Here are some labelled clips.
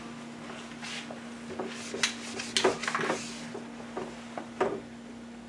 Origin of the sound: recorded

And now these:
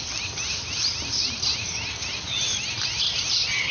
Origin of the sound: recorded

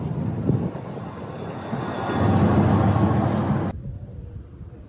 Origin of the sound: recorded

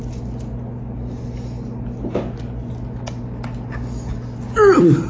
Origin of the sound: recorded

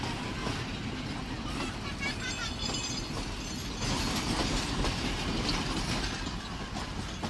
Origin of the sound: recorded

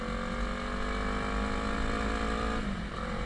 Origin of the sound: recorded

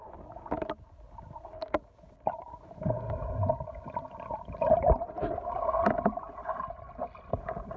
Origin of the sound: recorded